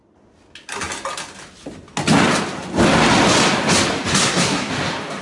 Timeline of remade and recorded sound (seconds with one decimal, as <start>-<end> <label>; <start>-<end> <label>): 0.0-4.2 recorded; 4.2-4.7 remade; 4.7-5.2 recorded